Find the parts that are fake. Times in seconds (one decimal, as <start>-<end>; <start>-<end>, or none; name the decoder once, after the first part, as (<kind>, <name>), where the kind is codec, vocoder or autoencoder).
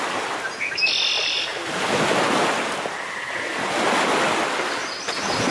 none